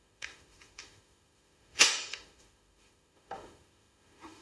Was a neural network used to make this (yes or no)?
yes